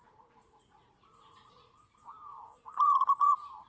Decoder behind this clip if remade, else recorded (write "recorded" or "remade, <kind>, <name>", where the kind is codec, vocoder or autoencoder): remade, vocoder, Vocos